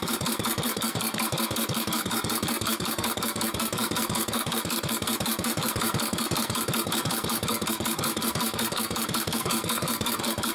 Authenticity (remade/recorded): remade